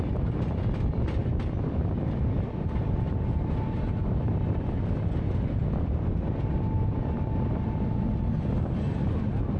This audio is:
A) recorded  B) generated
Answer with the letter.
A